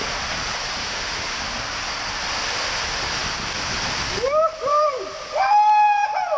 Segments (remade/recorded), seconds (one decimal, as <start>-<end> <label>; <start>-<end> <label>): 0.0-0.8 recorded; 0.8-1.4 remade; 1.4-6.4 recorded